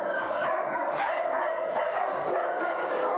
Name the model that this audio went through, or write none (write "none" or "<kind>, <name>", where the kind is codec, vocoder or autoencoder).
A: codec, DAC